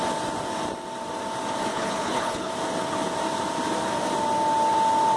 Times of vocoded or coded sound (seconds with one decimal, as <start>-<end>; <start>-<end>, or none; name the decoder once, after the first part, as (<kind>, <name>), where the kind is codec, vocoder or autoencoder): 1.7-2.5 (codec, HILCodec)